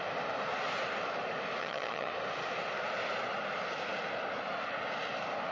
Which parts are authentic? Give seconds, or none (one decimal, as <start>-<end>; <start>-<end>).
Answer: 0.0-1.6; 2.1-5.5